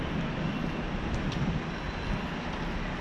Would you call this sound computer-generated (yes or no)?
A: no